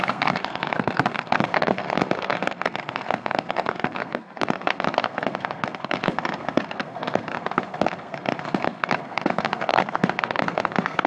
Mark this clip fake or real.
fake